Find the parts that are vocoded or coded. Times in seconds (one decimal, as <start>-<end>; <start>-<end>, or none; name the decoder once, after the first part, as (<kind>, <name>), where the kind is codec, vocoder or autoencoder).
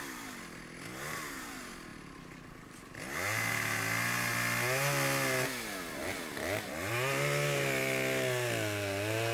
none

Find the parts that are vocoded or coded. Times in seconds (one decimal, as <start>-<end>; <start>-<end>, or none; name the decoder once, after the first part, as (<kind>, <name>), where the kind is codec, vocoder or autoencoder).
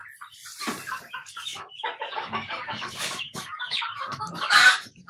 0.9-5.1 (codec, DAC)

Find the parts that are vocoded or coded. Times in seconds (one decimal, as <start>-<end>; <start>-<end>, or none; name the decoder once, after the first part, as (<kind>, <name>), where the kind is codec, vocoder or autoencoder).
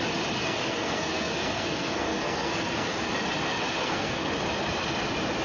0.4-3.1 (codec, SNAC); 3.8-4.3